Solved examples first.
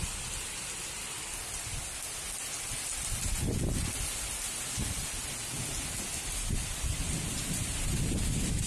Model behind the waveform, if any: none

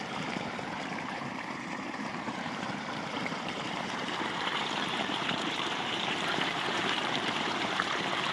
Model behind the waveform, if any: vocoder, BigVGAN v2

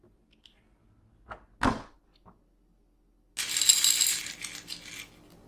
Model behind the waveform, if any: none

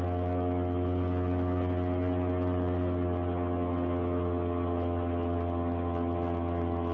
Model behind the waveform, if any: none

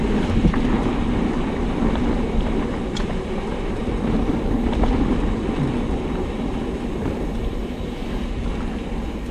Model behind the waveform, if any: none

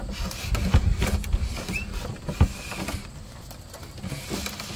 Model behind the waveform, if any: none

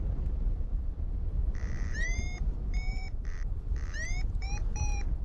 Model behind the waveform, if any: vocoder, BigVGAN v2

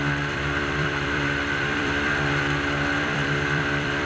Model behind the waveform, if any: vocoder, BigVGAN v2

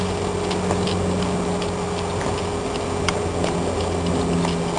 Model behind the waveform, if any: none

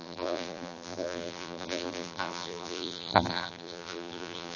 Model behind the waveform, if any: vocoder, BigVGAN v2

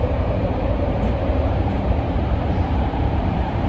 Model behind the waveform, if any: vocoder, BigVGAN v2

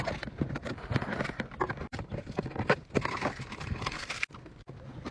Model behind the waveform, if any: vocoder, BigVGAN v2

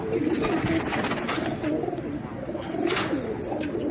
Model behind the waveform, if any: none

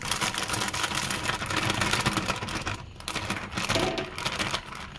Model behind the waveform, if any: none